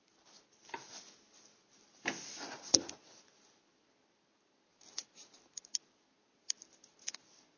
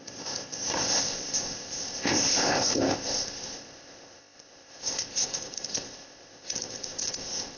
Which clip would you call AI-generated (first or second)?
second